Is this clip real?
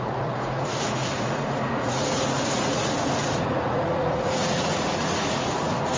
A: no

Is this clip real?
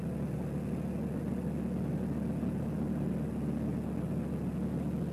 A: yes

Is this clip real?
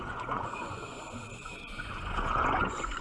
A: no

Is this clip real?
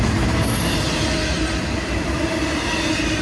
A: yes